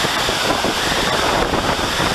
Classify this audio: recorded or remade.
recorded